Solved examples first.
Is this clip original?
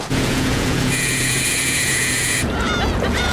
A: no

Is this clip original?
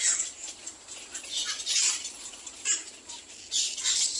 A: yes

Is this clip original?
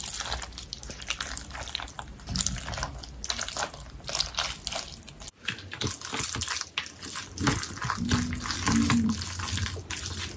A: yes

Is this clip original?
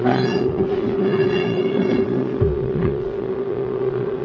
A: no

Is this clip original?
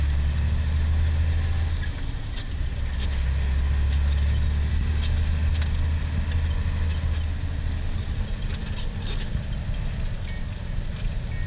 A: yes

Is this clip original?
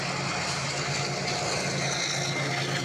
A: yes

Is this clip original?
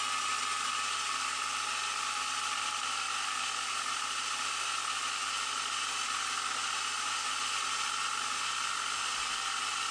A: yes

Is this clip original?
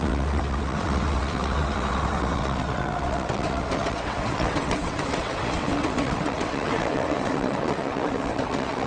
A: no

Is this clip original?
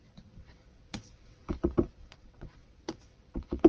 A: no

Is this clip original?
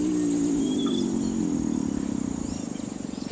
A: yes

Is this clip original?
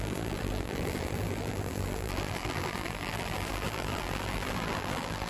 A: no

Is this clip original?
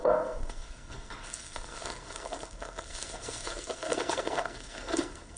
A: no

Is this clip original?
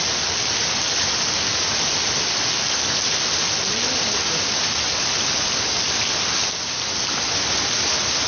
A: yes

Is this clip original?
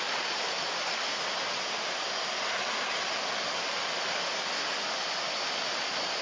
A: yes